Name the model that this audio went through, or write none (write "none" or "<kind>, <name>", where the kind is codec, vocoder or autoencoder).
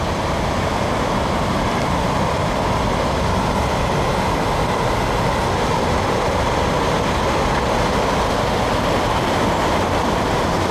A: none